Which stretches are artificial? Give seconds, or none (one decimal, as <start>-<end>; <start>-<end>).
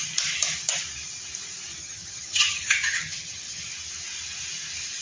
1.8-3.7